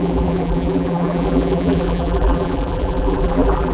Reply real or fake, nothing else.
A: fake